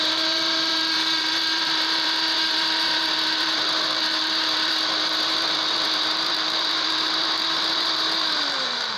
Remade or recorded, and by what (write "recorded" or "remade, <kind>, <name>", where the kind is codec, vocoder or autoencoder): remade, vocoder, BigVGAN v2